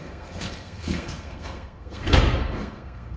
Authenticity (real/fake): fake